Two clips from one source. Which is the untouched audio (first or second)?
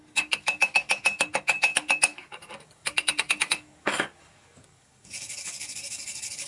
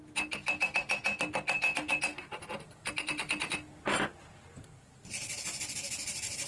second